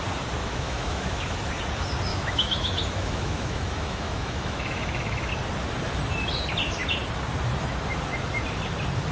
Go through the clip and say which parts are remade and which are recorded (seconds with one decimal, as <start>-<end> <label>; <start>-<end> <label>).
0.0-0.4 recorded; 0.4-1.5 remade; 1.5-2.1 recorded; 2.1-5.3 remade; 5.3-9.1 recorded